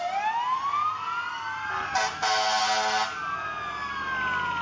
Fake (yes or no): no